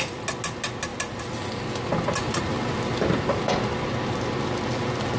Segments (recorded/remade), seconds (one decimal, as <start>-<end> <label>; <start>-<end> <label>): 0.0-5.2 recorded